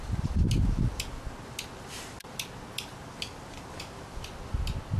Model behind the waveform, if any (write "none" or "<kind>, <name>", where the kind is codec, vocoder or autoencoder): none